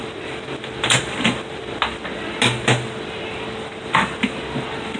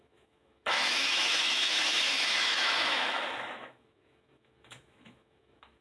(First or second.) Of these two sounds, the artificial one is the second